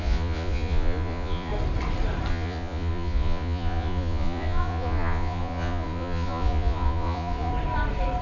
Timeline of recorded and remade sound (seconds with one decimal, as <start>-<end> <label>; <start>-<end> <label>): 0.0-1.5 remade; 1.5-2.3 recorded; 2.3-7.5 remade; 7.5-8.2 recorded